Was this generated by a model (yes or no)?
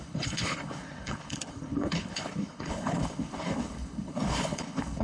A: yes